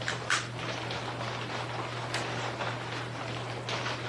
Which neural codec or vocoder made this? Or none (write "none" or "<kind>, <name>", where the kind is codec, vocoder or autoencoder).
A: none